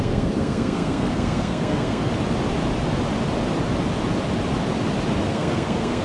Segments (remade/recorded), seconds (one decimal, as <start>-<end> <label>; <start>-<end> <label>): 0.0-2.1 remade; 2.1-5.3 recorded; 5.3-6.0 remade